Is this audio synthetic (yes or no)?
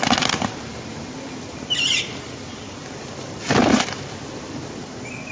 no